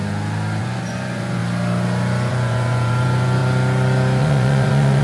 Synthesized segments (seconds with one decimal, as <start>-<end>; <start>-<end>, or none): 0.6-1.4; 2.3-3.4; 4.2-5.0